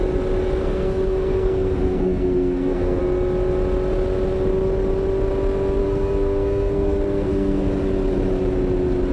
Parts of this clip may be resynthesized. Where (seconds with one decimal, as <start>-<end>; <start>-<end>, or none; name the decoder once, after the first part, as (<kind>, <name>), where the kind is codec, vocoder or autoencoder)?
0.6-3.0 (codec, SNAC); 5.8-7.6